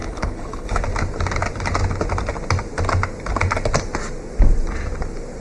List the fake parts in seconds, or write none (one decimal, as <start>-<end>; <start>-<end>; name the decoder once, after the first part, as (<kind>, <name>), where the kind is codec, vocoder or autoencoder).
0.0-0.8 (codec, HILCodec)